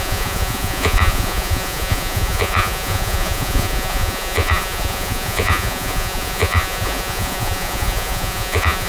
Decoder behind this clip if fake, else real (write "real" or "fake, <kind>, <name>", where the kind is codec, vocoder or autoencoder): fake, vocoder, Vocos